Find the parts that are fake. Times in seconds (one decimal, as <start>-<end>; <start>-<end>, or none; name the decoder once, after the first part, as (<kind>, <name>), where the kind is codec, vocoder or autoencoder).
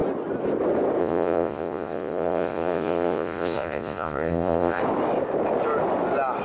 1.0-4.8 (vocoder, Vocos)